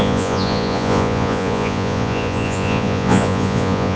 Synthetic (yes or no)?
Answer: yes